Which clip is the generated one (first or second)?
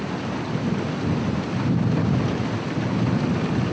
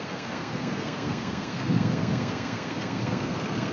second